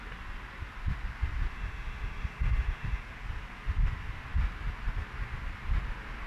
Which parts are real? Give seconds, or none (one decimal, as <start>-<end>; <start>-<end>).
0.0-1.5; 3.0-6.3